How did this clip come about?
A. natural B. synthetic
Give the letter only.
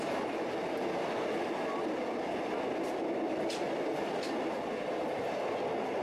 A